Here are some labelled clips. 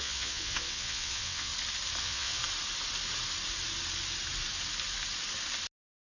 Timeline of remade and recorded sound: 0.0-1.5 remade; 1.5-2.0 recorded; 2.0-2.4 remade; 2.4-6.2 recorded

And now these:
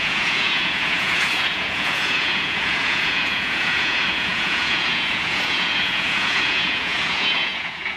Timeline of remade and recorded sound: 0.0-8.0 remade

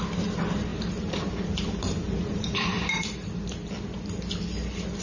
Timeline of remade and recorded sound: 0.0-0.7 recorded; 0.7-3.7 remade; 3.7-5.0 recorded

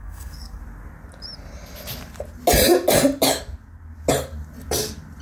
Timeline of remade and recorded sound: 0.0-0.6 remade; 0.6-5.2 recorded